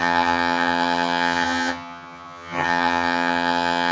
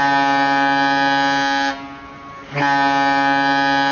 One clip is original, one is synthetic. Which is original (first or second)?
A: second